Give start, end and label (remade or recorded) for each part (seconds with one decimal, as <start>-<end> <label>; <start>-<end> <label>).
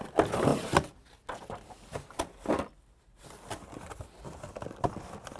0.0-5.4 recorded